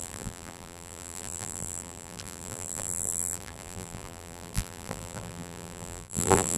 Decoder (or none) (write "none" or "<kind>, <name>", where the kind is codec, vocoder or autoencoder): vocoder, BigVGAN v2